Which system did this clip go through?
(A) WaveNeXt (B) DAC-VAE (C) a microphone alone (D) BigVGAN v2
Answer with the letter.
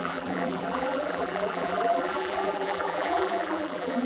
D